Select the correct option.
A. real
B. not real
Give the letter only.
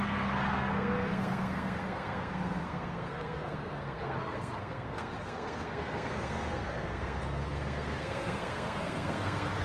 B